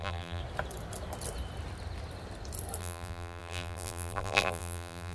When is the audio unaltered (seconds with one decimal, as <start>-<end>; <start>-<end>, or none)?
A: 0.4-2.8

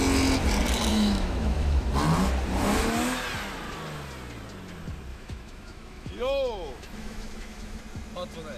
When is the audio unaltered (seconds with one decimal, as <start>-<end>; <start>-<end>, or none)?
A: 0.0-0.9; 1.9-5.1; 7.8-8.6

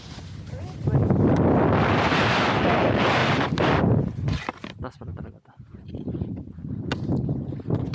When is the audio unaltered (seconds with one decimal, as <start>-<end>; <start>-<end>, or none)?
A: 0.0-7.9

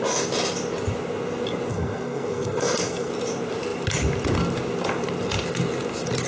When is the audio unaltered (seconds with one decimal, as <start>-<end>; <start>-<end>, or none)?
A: 0.0-1.7; 3.1-6.3

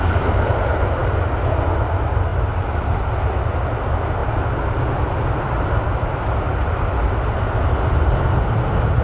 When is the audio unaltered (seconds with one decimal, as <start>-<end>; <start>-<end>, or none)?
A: 0.0-9.0

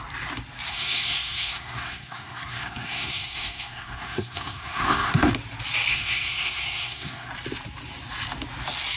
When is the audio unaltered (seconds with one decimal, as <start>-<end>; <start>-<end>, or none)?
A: 0.0-0.7; 5.3-5.9; 7.3-9.0

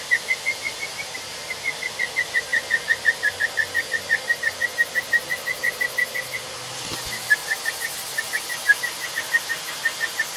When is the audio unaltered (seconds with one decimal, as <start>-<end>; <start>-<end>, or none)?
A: 0.0-10.4

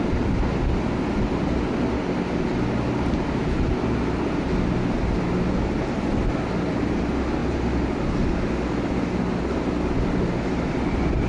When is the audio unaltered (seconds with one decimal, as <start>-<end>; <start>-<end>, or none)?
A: 0.0-11.3